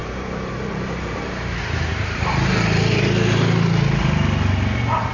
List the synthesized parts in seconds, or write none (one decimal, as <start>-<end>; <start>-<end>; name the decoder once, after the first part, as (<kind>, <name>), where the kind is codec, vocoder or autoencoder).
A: 0.0-3.0 (vocoder, BigVGAN v2)